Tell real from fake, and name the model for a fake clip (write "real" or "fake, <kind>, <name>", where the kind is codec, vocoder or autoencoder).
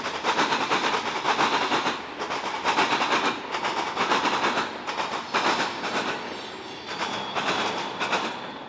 real